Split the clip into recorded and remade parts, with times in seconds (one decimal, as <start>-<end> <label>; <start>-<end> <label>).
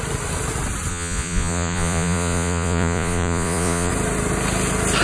0.0-0.9 recorded; 0.9-3.9 remade; 3.9-5.0 recorded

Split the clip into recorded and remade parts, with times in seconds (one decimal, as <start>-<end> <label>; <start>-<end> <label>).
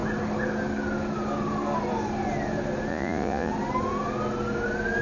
0.0-2.9 recorded; 2.9-3.5 remade; 3.5-5.0 recorded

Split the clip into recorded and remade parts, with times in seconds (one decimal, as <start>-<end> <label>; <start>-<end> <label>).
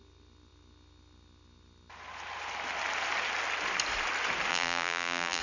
0.0-4.5 recorded; 4.5-5.4 remade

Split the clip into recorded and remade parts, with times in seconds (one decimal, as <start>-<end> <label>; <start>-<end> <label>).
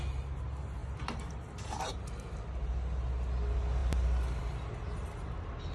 0.0-5.7 recorded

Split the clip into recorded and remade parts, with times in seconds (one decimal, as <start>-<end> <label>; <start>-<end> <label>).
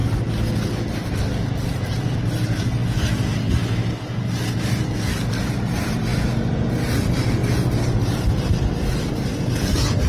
0.0-1.4 recorded; 1.4-2.8 remade; 2.8-5.5 recorded; 5.5-6.1 remade; 6.1-6.7 recorded; 6.7-10.1 remade